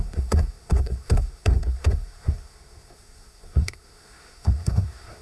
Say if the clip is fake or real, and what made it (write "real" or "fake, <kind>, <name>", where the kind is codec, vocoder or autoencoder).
fake, codec, SNAC